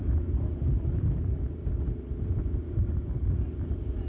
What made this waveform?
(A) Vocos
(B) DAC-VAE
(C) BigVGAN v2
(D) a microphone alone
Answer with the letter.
D